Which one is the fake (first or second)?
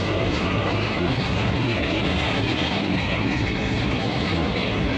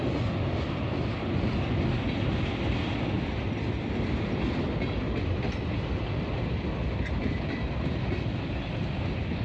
first